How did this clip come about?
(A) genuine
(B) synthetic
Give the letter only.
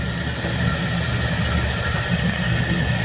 A